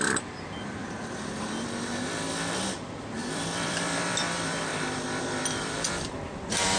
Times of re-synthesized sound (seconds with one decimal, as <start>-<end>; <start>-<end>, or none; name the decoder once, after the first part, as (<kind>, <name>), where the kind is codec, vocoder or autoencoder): 0.0-0.8 (vocoder, BigVGAN v2); 1.4-4.7; 5.2-6.8